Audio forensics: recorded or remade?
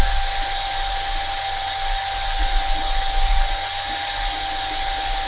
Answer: recorded